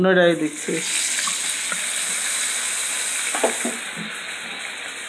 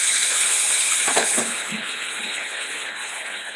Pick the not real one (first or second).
second